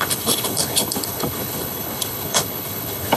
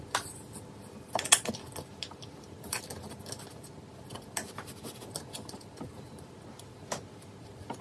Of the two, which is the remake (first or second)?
first